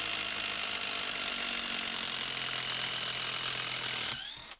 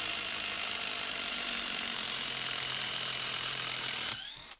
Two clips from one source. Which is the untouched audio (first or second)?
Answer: first